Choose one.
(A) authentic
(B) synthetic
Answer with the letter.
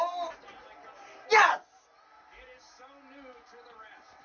A